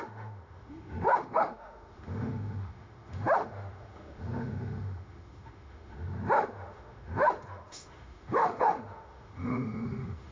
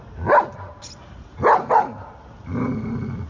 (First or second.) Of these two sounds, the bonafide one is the second